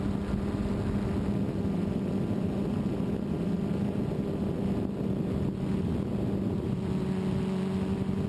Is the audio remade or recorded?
recorded